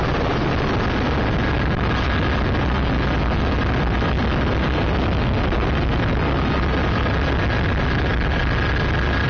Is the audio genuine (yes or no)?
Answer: yes